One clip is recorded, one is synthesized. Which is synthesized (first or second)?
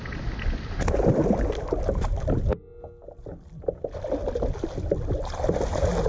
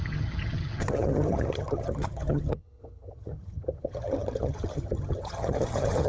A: second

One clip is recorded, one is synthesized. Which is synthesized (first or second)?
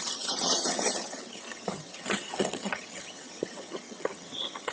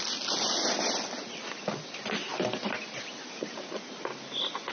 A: first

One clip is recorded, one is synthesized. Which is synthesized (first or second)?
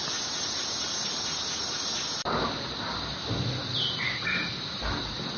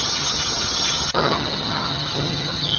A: second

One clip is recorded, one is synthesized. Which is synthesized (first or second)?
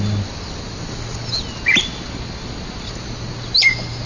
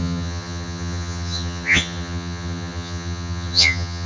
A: second